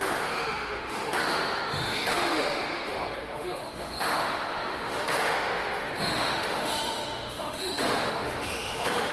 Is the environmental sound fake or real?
fake